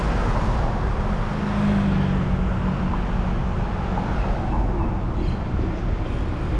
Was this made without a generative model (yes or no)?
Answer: yes